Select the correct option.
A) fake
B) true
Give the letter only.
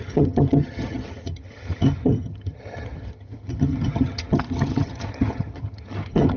A